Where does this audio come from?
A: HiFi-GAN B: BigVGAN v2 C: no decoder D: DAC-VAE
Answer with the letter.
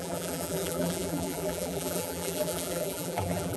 B